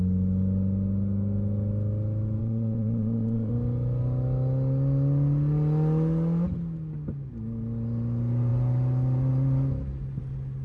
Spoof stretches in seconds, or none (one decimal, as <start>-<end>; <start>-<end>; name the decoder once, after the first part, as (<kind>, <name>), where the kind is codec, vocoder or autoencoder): 2.4-3.5 (vocoder, Vocos)